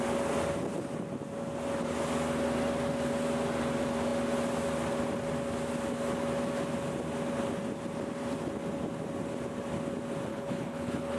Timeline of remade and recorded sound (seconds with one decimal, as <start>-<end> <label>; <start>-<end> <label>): 0.0-10.3 recorded; 10.3-11.2 remade